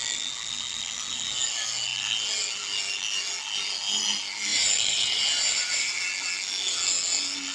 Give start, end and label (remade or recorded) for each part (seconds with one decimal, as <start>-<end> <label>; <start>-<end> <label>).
0.0-4.5 recorded; 4.5-6.0 remade; 6.0-7.5 recorded